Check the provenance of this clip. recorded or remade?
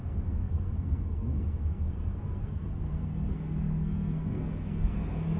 remade